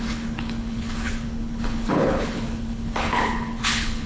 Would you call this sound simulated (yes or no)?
yes